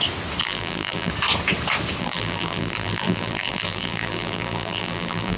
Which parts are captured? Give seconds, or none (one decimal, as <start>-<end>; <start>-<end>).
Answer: 0.0-0.4; 1.1-2.0